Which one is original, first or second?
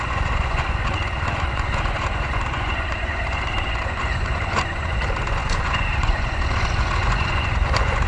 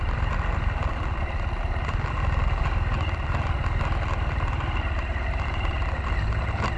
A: second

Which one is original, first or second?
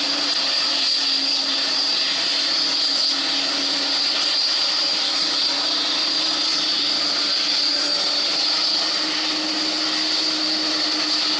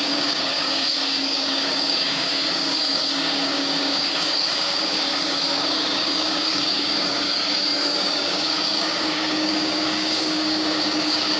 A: first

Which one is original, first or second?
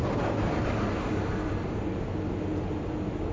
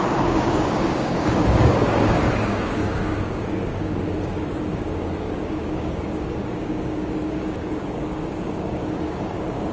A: first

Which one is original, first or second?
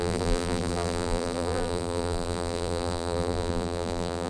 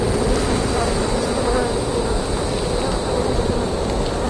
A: second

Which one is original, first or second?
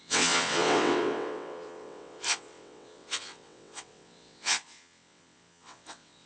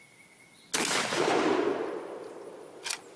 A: second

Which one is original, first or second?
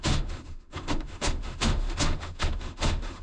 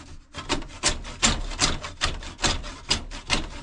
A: second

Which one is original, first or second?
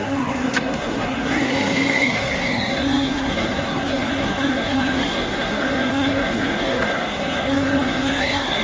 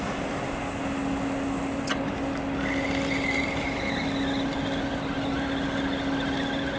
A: second